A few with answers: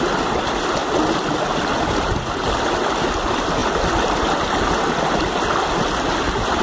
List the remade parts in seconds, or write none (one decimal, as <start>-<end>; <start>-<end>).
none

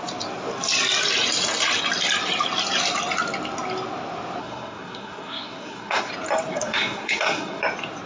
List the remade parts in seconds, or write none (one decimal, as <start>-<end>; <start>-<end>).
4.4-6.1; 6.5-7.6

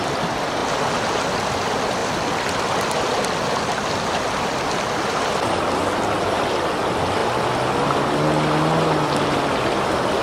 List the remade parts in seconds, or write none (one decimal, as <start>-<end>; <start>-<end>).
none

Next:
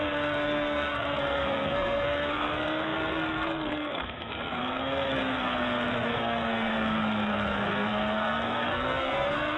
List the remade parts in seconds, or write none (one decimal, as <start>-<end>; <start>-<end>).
0.0-9.6

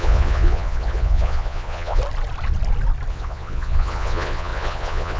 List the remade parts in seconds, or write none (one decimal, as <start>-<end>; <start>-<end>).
0.0-2.0; 3.1-5.2